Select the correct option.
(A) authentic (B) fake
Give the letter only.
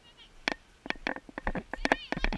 A